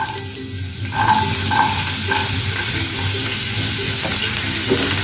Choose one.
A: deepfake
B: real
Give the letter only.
B